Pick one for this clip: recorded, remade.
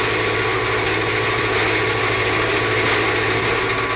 recorded